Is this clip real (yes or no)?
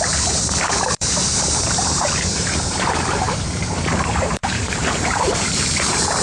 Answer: no